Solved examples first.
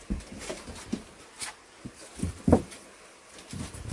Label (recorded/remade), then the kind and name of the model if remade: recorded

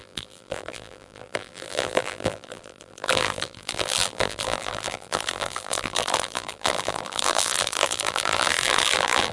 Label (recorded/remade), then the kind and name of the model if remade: remade, vocoder, BigVGAN v2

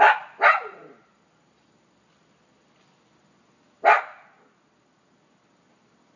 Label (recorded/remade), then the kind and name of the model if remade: recorded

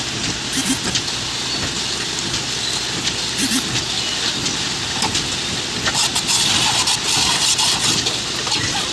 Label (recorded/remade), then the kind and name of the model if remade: recorded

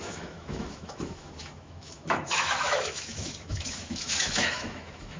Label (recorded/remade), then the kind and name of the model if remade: remade, autoencoder, DAC-VAE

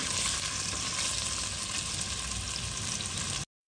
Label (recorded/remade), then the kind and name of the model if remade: recorded